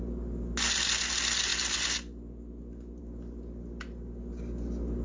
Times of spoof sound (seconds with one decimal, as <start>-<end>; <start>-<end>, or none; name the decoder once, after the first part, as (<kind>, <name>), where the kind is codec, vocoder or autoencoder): none